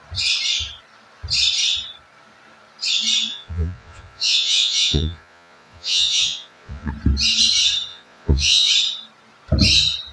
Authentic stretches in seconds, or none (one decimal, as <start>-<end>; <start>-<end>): 0.0-3.3; 6.9-7.9; 8.7-10.1